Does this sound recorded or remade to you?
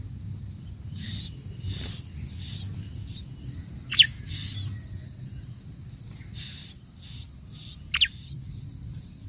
recorded